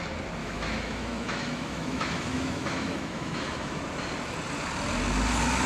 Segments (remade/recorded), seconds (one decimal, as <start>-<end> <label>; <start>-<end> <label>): 0.0-0.4 recorded; 0.4-3.8 remade; 3.8-5.7 recorded